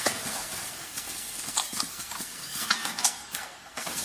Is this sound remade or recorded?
remade